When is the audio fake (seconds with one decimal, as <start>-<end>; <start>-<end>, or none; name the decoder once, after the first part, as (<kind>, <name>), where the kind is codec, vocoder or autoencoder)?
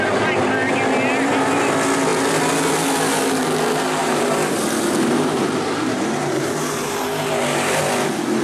4.0-7.8 (vocoder, BigVGAN v2)